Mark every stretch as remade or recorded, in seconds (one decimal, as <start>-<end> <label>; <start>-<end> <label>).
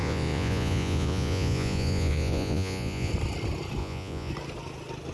0.0-3.1 remade; 3.1-3.8 recorded; 3.8-4.3 remade; 4.3-5.1 recorded